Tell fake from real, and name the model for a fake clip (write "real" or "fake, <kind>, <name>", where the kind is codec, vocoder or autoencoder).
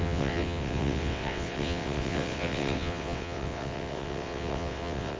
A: fake, vocoder, WaveNeXt